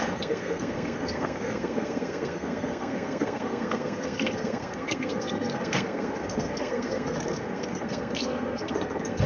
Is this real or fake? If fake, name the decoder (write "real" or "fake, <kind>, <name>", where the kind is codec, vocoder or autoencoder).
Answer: fake, codec, SNAC